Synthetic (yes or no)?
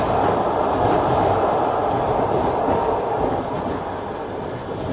yes